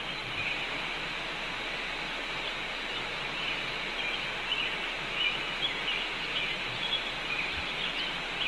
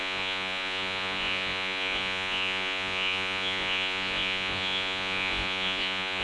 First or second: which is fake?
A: second